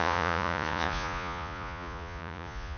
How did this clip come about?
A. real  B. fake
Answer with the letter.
B